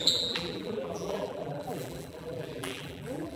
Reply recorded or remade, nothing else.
remade